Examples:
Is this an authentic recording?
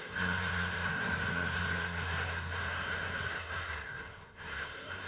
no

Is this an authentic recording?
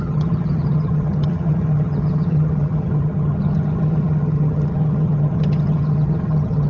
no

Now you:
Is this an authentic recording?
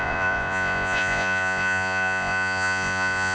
no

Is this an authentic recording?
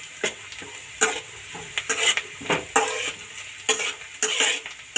yes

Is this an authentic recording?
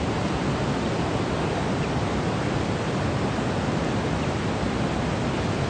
yes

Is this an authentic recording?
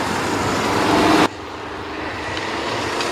yes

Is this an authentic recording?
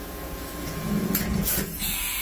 no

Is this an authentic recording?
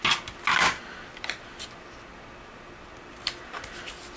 yes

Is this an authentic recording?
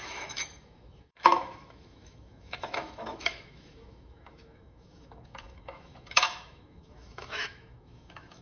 no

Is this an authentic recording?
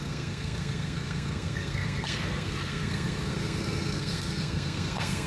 no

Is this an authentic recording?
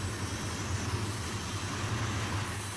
yes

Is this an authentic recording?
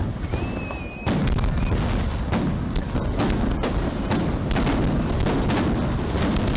yes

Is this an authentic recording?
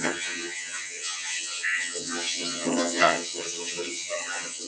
no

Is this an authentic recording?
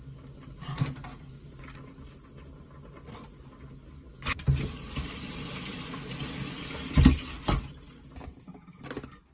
yes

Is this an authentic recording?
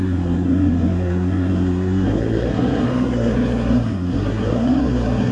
no